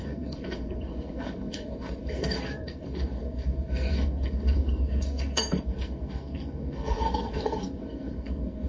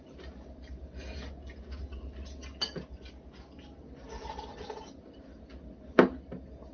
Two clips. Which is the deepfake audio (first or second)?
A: first